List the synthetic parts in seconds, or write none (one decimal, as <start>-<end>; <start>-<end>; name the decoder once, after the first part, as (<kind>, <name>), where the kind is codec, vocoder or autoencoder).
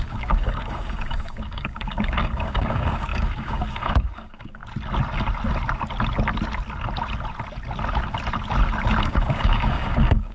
0.0-4.6 (codec, DAC); 9.0-10.3